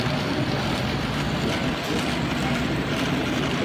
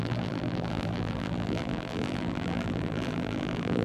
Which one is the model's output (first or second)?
second